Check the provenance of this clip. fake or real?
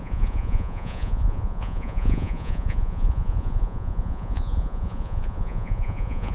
fake